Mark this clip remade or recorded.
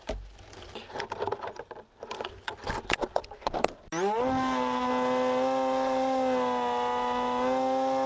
recorded